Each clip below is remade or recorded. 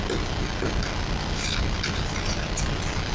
recorded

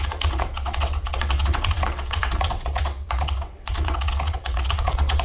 remade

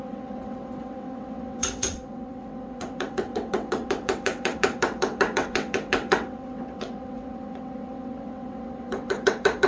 remade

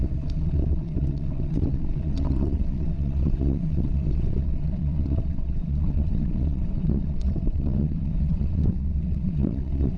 remade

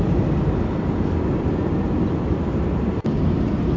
recorded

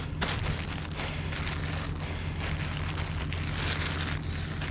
recorded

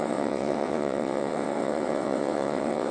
remade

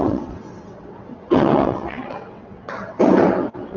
remade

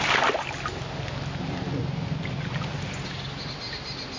recorded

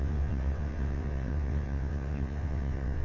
remade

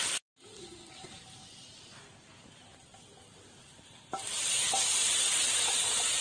recorded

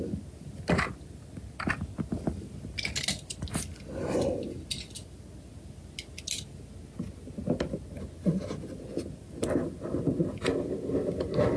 recorded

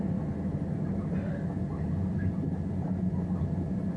recorded